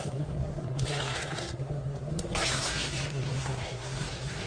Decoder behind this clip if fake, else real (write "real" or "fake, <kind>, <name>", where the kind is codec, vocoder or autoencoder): fake, codec, SNAC